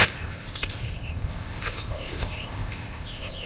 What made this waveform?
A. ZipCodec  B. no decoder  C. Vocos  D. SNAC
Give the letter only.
A